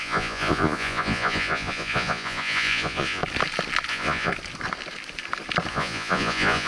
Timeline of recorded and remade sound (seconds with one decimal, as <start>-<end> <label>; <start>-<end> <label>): 0.0-3.2 remade; 3.2-3.9 recorded; 3.9-4.3 remade; 4.3-5.7 recorded; 5.7-6.7 remade